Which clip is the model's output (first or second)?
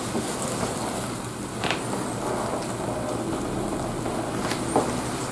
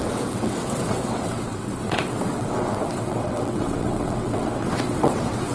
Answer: second